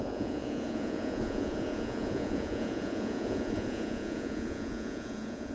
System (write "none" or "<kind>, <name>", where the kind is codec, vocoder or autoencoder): vocoder, Vocos